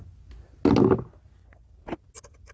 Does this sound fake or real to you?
real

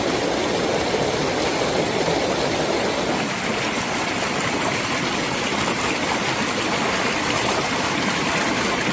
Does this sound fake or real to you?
real